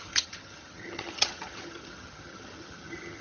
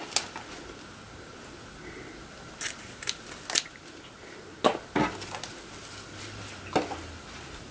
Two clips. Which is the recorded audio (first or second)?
second